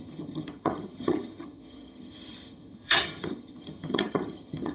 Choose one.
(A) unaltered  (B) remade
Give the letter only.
B